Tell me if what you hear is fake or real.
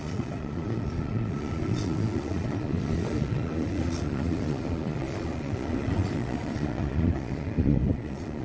fake